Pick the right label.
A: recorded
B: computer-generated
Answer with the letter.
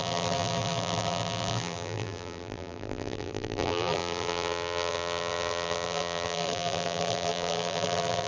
B